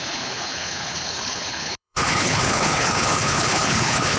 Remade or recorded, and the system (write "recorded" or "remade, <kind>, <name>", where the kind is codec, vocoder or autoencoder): remade, codec, HILCodec